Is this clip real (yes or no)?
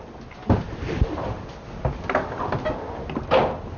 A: yes